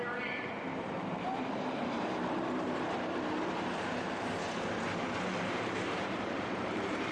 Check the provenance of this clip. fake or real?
fake